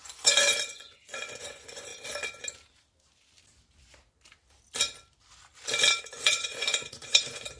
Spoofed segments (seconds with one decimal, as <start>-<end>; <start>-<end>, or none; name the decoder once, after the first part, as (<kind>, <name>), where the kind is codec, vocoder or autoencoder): 0.0-1.9 (vocoder, Vocos); 6.0-7.6